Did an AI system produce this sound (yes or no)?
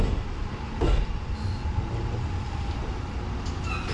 no